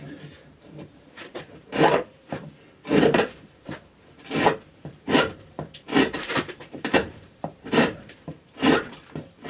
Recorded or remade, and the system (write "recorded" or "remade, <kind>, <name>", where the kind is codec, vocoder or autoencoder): remade, vocoder, BigVGAN v2